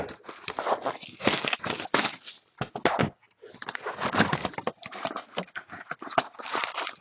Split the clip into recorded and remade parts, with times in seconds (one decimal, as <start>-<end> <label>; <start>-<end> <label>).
0.0-4.4 recorded; 4.4-5.3 remade; 5.3-7.0 recorded